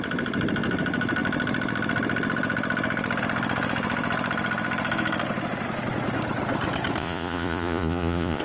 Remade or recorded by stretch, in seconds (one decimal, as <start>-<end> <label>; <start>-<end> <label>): 0.0-7.0 recorded; 7.0-8.4 remade